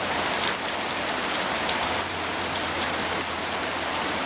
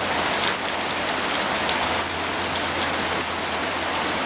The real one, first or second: second